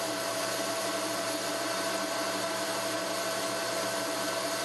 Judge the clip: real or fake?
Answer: fake